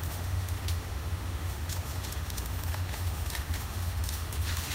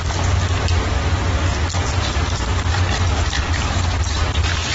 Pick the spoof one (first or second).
first